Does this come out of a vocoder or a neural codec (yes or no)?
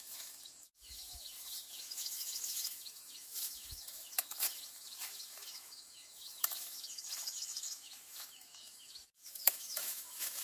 yes